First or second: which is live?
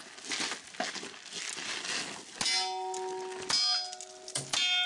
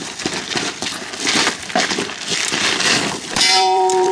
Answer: first